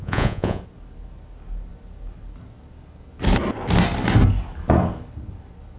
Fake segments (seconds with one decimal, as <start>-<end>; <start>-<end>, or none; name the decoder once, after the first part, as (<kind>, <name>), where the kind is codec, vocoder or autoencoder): 0.0-0.6 (vocoder, Vocos)